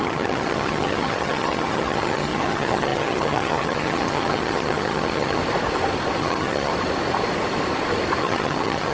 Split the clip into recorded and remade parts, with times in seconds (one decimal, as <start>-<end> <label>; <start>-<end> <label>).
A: 0.0-5.4 remade; 5.4-6.2 recorded; 6.2-6.7 remade; 6.7-8.2 recorded; 8.2-8.9 remade

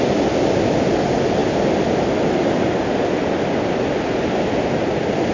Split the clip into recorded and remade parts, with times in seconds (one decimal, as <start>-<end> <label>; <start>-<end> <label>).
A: 0.0-5.3 recorded